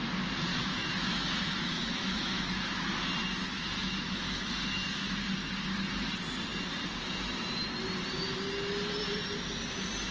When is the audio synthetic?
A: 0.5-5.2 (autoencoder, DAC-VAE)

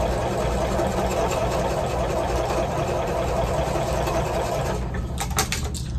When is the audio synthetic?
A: none

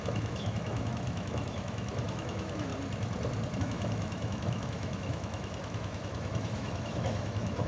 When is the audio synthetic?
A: 0.0-2.7 (autoencoder, DAC-VAE); 3.6-7.7

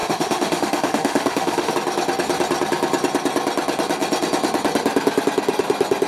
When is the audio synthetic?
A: 0.0-1.7 (autoencoder, DAC-VAE)

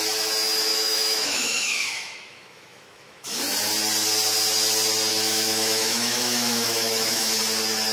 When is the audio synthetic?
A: 0.7-3.4 (autoencoder, DAC-VAE); 5.1-7.4

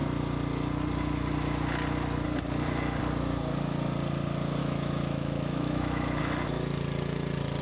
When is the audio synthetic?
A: 4.6-6.2 (autoencoder, DAC-VAE)

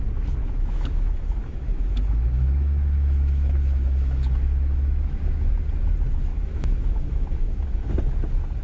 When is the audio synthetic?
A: 0.4-5.5 (autoencoder, DAC-VAE); 6.3-7.9

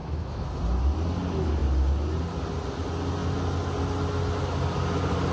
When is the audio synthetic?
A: 0.0-0.6 (autoencoder, DAC-VAE)